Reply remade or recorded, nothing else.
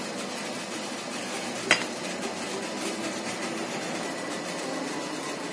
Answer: recorded